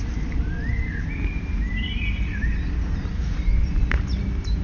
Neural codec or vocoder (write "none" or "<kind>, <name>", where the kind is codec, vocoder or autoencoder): vocoder, BigVGAN v2